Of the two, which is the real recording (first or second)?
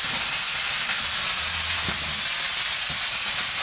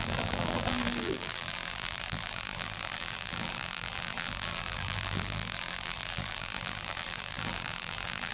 first